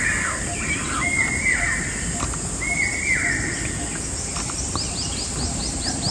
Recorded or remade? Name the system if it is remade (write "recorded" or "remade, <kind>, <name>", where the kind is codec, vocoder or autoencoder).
recorded